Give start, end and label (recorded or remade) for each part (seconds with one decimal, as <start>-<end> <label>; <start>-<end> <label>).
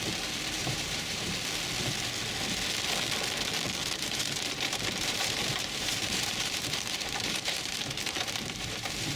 0.0-0.6 recorded; 0.6-1.3 remade; 1.3-3.8 recorded; 3.8-9.2 remade